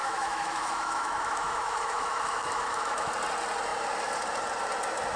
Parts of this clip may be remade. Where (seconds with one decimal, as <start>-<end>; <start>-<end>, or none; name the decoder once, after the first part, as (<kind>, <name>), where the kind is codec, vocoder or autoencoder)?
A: 0.0-3.1 (autoencoder, DAC-VAE)